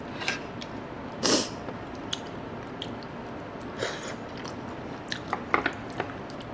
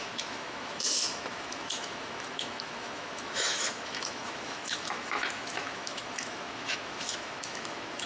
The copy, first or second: second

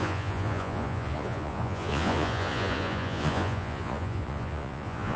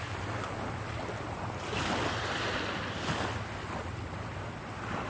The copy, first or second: first